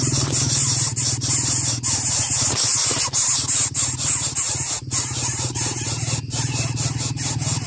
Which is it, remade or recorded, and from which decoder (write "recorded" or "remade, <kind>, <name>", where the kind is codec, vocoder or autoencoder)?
recorded